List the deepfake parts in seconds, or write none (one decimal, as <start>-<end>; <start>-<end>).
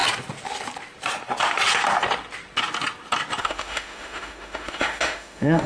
3.4-5.7